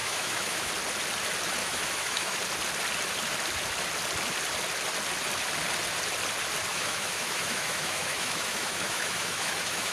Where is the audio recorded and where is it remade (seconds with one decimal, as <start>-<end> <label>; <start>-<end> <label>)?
0.0-0.7 remade; 0.7-1.6 recorded; 1.6-2.4 remade; 2.4-6.7 recorded; 6.7-9.9 remade